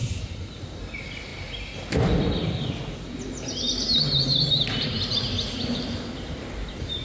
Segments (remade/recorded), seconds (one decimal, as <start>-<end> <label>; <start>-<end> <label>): 0.0-0.8 remade; 0.8-7.0 recorded